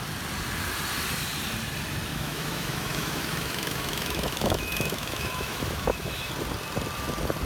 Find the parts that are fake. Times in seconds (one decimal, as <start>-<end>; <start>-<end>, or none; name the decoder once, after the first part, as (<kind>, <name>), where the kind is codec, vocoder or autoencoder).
2.1-6.3 (autoencoder, DAC-VAE)